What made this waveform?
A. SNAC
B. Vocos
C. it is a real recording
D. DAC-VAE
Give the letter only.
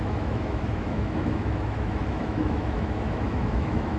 D